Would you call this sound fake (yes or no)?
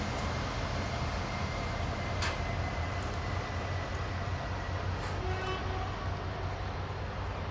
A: no